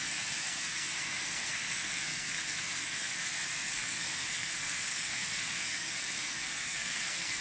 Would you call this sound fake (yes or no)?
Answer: yes